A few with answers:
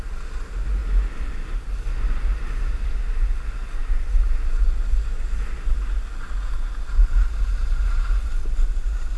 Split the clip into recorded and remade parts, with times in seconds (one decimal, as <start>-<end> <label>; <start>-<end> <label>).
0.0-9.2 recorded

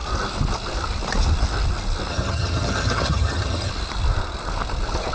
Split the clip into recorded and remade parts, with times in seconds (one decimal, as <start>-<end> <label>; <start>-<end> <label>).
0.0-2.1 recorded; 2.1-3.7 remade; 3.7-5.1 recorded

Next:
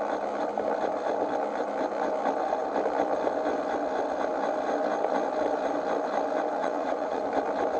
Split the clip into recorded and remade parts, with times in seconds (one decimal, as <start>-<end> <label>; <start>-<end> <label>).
0.0-6.6 recorded; 6.6-7.2 remade; 7.2-7.8 recorded

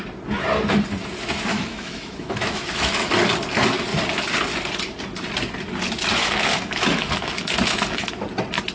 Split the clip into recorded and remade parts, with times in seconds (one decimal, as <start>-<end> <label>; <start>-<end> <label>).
0.0-1.5 recorded; 1.5-3.1 remade; 3.1-6.2 recorded; 6.2-8.1 remade; 8.1-8.7 recorded